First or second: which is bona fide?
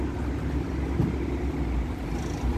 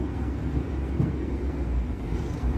first